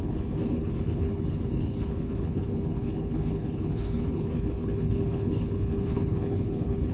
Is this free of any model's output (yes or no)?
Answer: no